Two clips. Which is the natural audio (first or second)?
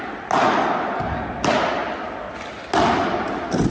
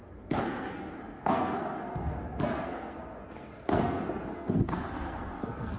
first